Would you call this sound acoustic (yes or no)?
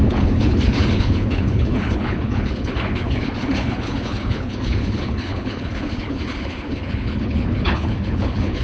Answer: no